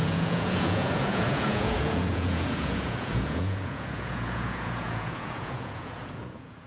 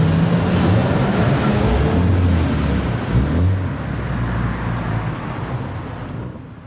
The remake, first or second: first